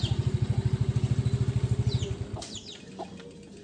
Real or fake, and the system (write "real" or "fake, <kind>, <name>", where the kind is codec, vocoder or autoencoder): real